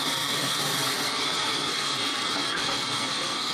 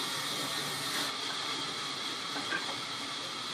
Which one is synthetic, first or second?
first